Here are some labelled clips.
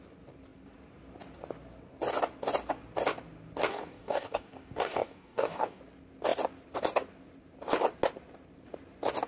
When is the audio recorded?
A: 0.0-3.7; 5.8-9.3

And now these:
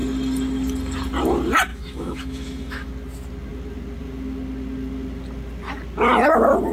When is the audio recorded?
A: 0.0-1.7; 2.9-6.7